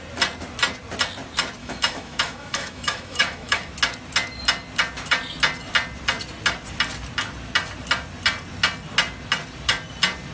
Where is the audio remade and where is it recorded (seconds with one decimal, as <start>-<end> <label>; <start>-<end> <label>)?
0.0-1.6 recorded; 1.6-3.7 remade; 3.7-10.3 recorded